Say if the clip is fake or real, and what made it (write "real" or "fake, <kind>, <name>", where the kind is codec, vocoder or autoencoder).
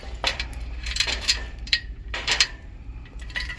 fake, vocoder, BigVGAN v2